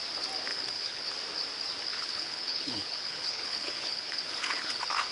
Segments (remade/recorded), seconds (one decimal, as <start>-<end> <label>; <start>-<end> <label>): 0.0-0.5 recorded; 0.5-1.1 remade; 1.1-1.9 recorded; 1.9-5.1 remade